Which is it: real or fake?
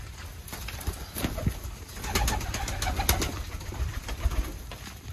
real